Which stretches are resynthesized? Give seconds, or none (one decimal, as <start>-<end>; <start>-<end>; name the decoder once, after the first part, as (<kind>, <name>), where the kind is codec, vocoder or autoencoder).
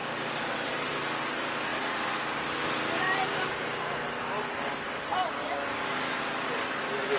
0.0-1.2 (vocoder, BigVGAN v2); 1.7-4.9